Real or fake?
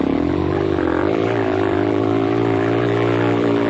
fake